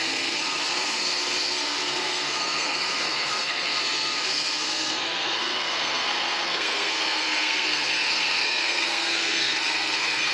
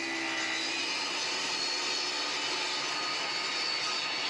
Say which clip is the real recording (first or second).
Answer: second